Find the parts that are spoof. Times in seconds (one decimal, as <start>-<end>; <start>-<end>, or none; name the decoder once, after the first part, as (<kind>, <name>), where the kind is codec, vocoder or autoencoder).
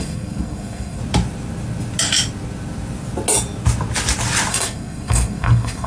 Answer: 0.0-1.0 (codec, SNAC); 4.5-5.9